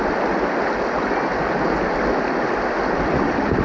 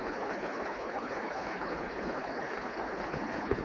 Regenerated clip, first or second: second